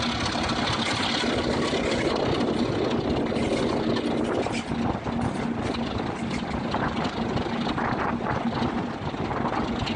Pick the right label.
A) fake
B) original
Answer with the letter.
B